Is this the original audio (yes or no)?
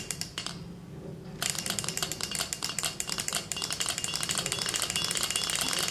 yes